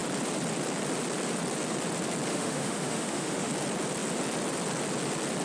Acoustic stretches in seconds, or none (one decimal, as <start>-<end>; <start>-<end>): 0.0-2.3; 3.5-5.4

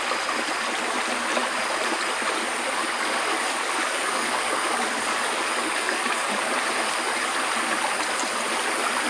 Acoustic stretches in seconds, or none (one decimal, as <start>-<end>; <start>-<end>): 0.0-2.8; 6.5-9.1